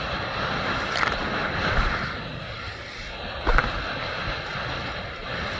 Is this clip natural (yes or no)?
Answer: yes